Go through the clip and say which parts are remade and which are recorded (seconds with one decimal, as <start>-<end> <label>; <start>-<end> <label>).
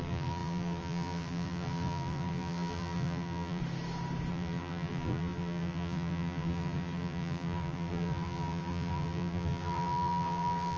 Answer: 0.0-3.6 remade; 3.6-4.3 recorded; 4.3-10.8 remade